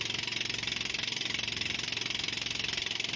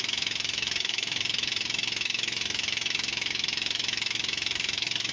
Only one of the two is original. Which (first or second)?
first